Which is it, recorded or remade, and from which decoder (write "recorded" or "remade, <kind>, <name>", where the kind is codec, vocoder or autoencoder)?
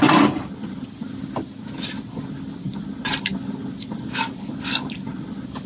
recorded